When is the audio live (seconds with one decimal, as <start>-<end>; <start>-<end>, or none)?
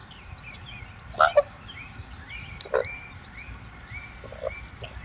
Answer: 0.0-5.0